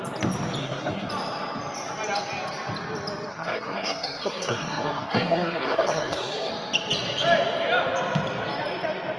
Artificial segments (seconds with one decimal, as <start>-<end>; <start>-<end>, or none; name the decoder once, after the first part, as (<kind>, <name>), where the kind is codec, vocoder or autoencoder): 0.6-1.1 (codec, SNAC); 3.3-6.5